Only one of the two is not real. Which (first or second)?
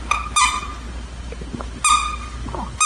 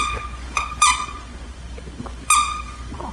second